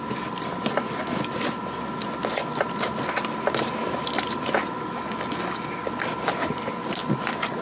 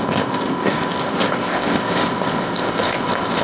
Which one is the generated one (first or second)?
second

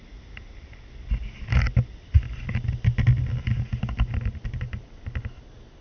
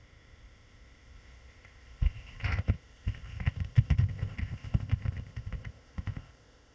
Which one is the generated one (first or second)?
second